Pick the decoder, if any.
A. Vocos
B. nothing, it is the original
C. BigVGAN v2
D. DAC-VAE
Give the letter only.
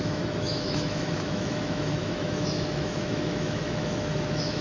D